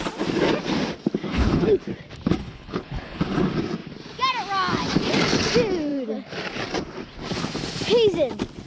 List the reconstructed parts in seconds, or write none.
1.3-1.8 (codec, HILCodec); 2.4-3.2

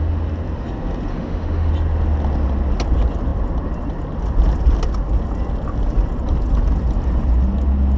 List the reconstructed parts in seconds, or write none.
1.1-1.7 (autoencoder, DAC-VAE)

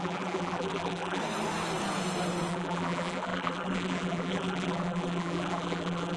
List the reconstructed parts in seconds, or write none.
0.0-1.2 (vocoder, BigVGAN v2); 2.5-6.2

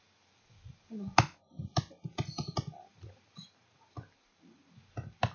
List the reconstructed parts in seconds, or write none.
2.9-3.6 (vocoder, BigVGAN v2)

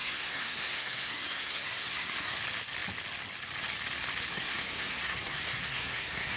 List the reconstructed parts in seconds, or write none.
0.0-2.4 (codec, SNAC); 4.3-6.4